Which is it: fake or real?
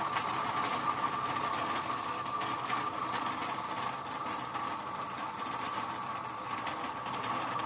real